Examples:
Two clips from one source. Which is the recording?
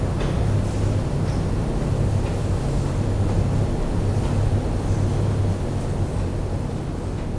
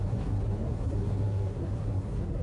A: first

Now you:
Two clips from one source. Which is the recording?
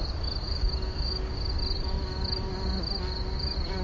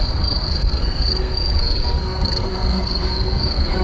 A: first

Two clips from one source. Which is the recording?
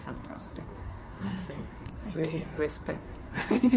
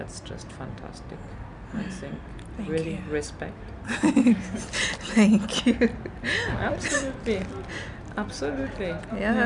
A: second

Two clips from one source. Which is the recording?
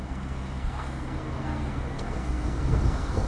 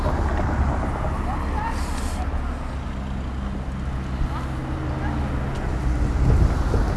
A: second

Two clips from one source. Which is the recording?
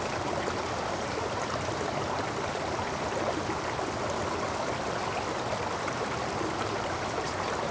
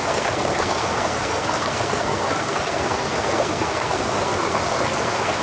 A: first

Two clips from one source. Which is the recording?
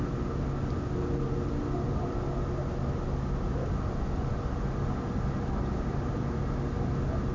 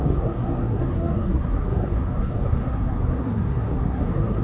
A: first